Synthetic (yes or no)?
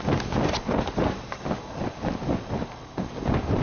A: no